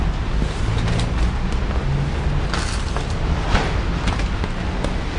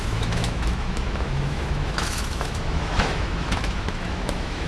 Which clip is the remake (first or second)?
second